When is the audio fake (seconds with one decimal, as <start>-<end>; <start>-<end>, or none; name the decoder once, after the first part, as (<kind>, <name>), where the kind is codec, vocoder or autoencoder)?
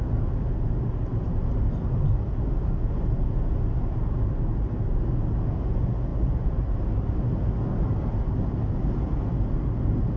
none